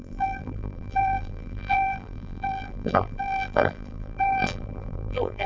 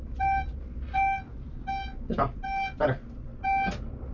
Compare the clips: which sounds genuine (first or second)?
second